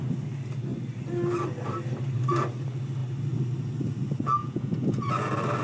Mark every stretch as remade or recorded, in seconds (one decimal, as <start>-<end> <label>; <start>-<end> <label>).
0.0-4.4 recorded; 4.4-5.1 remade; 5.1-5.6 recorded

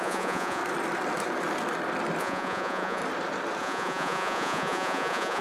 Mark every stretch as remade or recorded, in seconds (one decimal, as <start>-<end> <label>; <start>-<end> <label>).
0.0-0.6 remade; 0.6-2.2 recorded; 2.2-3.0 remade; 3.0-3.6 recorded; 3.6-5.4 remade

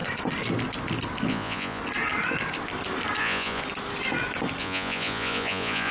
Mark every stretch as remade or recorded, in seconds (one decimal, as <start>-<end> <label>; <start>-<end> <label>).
0.0-1.3 recorded; 1.3-1.8 remade; 1.8-3.2 recorded; 3.2-3.6 remade; 3.6-4.6 recorded; 4.6-5.9 remade

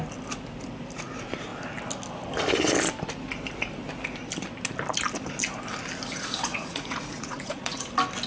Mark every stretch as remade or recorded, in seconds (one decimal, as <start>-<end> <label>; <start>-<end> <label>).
0.0-6.5 recorded; 6.5-7.9 remade; 7.9-8.3 recorded

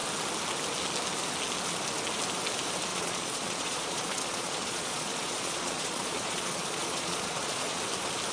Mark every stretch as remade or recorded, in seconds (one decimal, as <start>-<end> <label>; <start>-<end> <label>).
0.0-2.9 recorded; 2.9-7.8 remade; 7.8-8.3 recorded

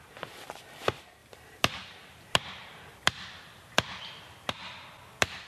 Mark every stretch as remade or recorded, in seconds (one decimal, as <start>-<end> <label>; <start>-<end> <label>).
0.0-5.5 recorded